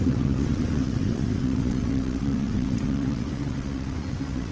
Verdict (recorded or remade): remade